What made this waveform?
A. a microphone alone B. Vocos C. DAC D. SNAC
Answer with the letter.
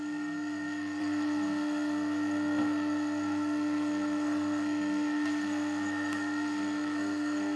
D